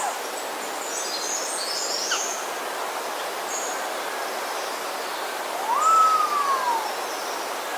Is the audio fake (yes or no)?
no